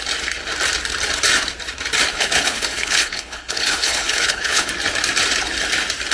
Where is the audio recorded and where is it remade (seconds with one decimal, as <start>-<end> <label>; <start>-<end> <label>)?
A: 0.0-2.1 recorded; 2.1-4.7 remade; 4.7-6.1 recorded